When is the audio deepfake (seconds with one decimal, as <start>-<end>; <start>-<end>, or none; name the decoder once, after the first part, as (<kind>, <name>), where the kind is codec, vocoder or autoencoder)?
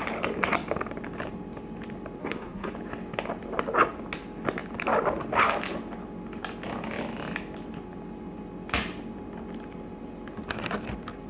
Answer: 2.2-2.7 (codec, SNAC)